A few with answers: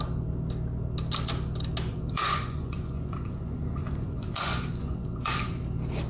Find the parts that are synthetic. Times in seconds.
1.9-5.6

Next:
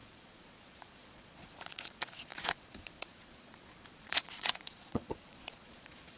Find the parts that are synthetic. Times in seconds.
0.0-6.2

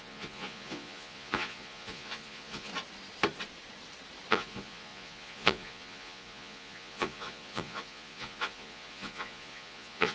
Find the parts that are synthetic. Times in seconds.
0.0-2.7; 4.3-10.1